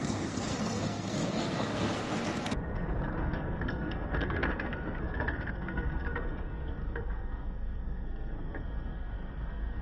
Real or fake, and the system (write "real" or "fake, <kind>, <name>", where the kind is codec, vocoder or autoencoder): fake, codec, SNAC